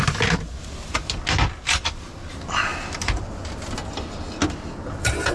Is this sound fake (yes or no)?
no